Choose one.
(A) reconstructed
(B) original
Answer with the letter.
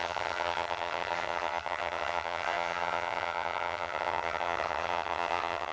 A